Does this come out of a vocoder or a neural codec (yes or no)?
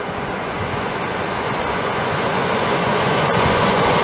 yes